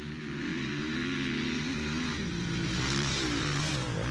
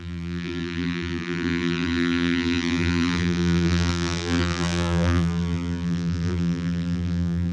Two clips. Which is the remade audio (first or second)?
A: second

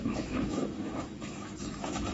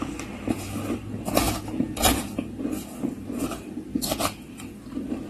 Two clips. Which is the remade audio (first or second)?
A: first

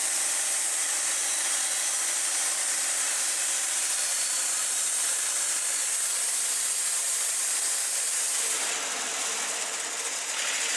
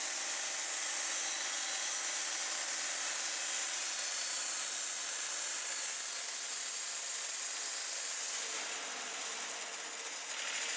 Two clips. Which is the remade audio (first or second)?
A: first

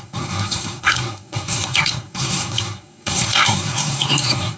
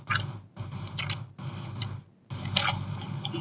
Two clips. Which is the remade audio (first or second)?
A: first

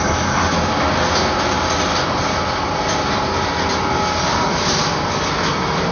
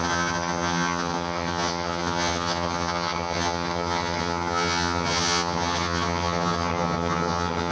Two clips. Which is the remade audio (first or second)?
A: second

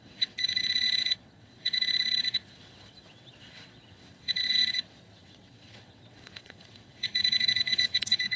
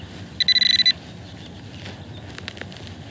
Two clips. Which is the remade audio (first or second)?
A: first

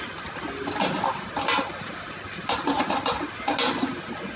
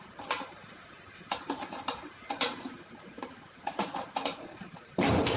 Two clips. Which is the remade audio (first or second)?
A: second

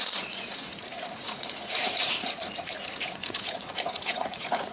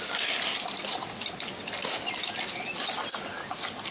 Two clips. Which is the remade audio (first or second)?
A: first